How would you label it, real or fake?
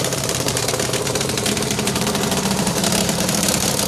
fake